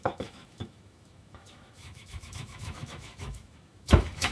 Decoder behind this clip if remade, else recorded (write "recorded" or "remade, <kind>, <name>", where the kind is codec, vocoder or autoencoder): remade, autoencoder, DAC-VAE